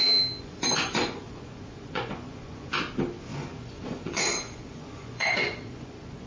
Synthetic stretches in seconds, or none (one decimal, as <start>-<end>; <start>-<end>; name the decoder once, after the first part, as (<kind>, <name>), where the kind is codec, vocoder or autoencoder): 0.4-2.7 (vocoder, Vocos); 3.3-6.3